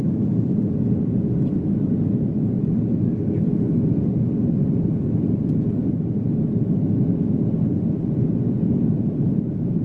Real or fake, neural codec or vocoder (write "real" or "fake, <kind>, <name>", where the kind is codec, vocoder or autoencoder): real